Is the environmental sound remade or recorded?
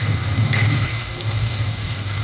remade